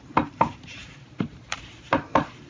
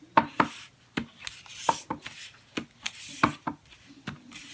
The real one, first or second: second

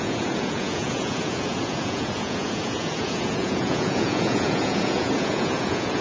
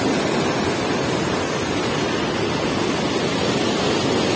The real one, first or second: second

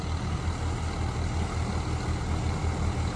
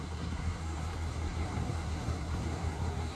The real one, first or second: first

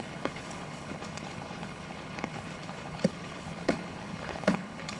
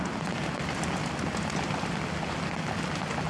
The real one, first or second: second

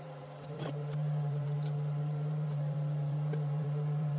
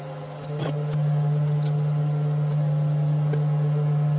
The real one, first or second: second